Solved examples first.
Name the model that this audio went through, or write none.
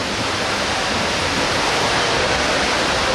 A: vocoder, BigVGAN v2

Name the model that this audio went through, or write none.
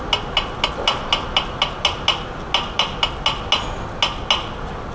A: none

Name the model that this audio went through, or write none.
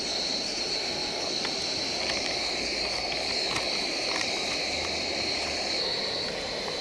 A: vocoder, BigVGAN v2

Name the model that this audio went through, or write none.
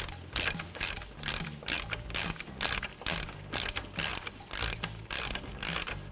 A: none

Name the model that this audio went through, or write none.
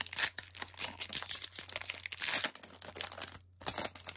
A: none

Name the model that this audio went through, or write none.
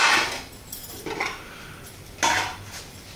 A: none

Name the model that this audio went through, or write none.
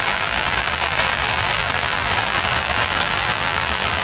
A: vocoder, BigVGAN v2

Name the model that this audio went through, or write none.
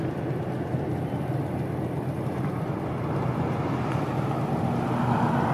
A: none